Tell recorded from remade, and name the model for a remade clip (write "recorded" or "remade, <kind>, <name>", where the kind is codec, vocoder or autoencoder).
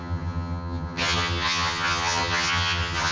remade, vocoder, HiFi-GAN